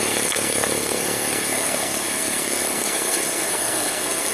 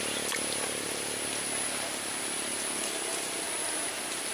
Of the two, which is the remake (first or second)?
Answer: first